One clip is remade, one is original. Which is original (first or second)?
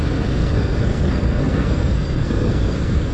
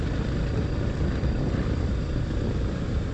second